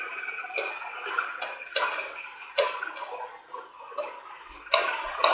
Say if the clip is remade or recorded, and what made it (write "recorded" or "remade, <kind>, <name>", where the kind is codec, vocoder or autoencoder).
recorded